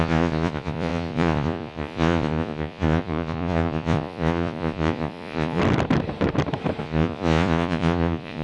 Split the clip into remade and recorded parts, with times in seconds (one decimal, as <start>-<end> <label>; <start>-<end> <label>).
0.0-5.6 remade; 5.6-6.8 recorded; 6.8-8.4 remade